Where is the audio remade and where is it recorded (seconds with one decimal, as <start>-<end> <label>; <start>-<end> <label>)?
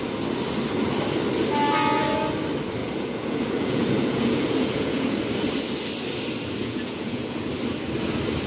0.0-2.8 recorded; 2.8-5.2 remade; 5.2-6.6 recorded; 6.6-7.5 remade; 7.5-8.5 recorded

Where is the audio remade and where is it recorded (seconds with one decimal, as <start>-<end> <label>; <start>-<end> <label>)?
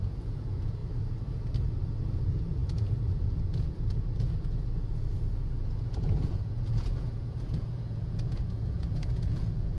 0.0-0.8 remade; 0.8-2.2 recorded; 2.2-9.8 remade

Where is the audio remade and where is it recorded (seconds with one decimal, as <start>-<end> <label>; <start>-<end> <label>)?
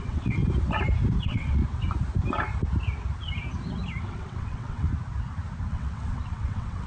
0.0-0.4 remade; 0.4-1.2 recorded; 1.2-1.6 remade; 1.6-4.0 recorded; 4.0-4.9 remade; 4.9-5.7 recorded; 5.7-6.9 remade